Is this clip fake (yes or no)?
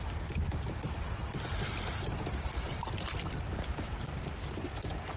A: yes